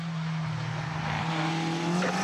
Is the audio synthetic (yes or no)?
no